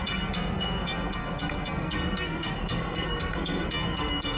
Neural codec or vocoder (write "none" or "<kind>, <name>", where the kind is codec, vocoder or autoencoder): codec, SNAC